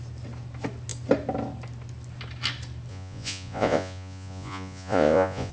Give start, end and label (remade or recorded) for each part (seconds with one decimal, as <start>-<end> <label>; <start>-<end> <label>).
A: 0.0-2.9 recorded; 2.9-5.5 remade